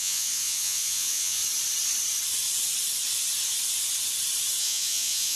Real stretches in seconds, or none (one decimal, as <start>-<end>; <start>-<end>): 1.4-4.6